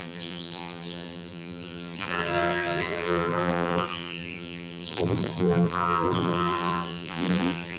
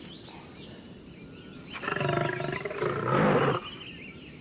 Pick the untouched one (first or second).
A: second